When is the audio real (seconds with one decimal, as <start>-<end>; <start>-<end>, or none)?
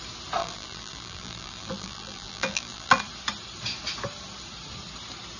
0.0-0.4; 3.0-5.4